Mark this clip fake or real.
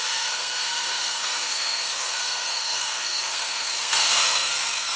fake